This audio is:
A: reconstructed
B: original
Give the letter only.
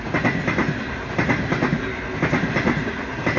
B